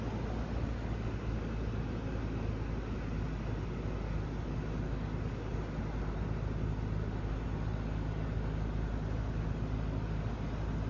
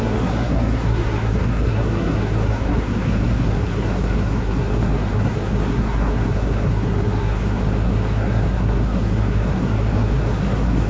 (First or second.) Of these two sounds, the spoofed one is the second